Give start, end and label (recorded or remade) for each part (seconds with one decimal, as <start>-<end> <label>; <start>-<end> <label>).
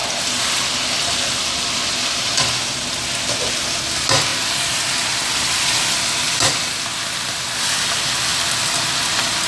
0.0-4.3 recorded; 4.3-5.8 remade; 5.8-8.3 recorded; 8.3-9.5 remade